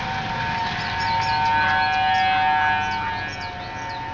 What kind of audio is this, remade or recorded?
recorded